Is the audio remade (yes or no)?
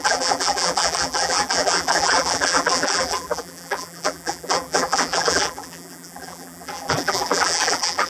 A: yes